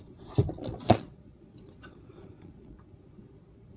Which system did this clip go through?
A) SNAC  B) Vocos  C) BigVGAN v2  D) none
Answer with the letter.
B